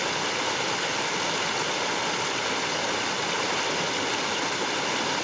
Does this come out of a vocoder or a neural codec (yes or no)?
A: no